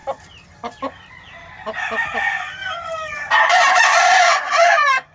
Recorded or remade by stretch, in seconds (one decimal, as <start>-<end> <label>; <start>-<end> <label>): 0.0-1.9 recorded; 1.9-2.6 remade; 2.6-3.4 recorded; 3.4-5.1 remade